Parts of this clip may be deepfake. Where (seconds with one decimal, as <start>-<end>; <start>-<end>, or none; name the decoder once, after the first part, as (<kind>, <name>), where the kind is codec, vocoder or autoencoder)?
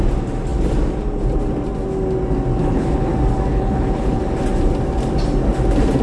2.6-3.1 (codec, HILCodec); 3.5-4.2